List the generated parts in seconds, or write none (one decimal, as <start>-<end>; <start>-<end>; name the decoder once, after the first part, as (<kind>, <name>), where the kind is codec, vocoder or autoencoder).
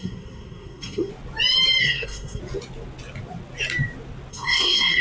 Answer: 0.0-1.1 (codec, SNAC); 1.8-2.4; 4.3-5.0